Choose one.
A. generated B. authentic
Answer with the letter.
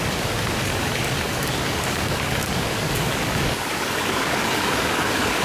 A